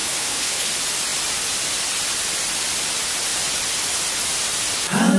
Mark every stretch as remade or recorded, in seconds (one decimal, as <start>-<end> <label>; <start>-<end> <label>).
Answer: 0.0-0.7 remade; 0.7-5.2 recorded